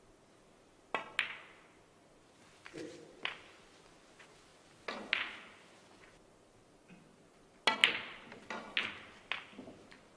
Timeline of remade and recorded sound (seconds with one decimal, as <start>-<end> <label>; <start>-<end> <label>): 0.0-10.2 recorded